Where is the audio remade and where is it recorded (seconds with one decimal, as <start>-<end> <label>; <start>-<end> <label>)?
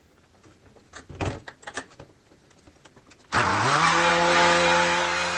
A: 0.0-5.4 recorded